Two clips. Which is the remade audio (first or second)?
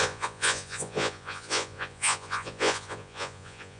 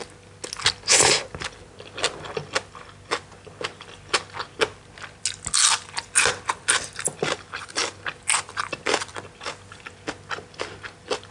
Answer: first